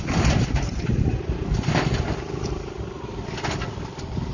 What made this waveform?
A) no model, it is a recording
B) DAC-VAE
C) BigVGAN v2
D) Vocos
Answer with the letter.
A